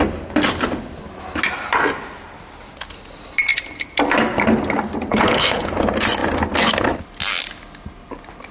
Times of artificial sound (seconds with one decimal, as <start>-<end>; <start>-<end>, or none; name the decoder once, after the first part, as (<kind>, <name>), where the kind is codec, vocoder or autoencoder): 5.1-5.7 (codec, HILCodec)